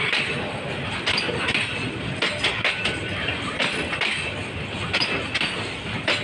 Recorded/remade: recorded